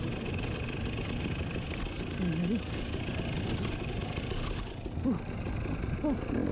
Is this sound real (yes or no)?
yes